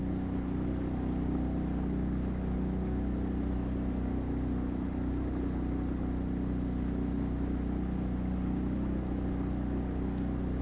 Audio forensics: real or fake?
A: real